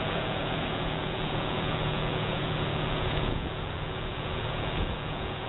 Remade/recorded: remade